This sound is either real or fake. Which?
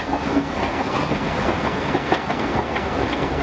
fake